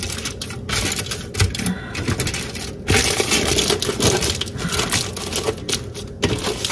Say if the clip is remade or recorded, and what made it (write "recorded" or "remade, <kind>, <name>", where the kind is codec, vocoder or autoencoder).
recorded